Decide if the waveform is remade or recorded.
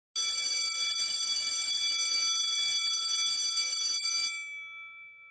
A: recorded